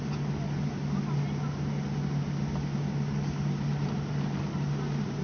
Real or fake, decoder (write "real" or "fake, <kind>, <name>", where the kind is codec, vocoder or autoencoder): real